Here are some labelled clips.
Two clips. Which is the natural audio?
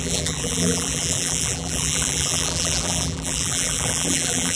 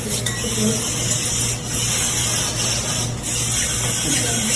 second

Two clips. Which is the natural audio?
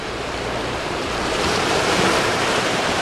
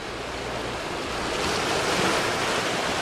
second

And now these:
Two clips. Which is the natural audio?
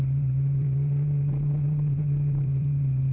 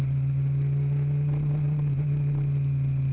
second